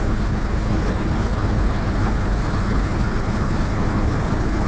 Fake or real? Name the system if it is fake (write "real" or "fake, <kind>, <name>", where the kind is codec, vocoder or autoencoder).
fake, codec, HILCodec